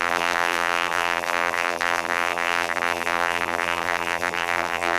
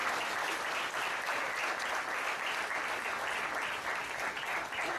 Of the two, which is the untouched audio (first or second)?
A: second